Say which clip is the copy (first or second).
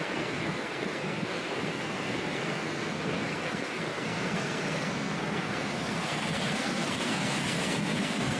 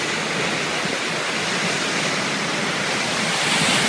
first